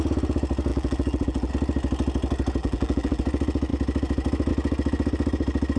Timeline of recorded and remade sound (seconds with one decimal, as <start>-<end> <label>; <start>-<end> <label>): 0.0-0.7 recorded; 0.7-1.5 remade; 1.5-2.6 recorded; 2.6-3.2 remade; 3.2-5.8 recorded